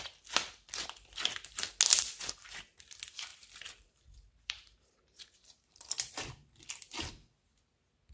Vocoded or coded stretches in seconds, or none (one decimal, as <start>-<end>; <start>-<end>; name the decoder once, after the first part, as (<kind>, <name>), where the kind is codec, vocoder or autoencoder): 3.3-6.1 (vocoder, BigVGAN v2)